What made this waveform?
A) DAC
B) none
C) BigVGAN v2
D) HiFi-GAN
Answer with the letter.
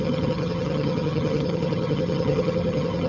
D